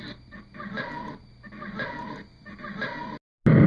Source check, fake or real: real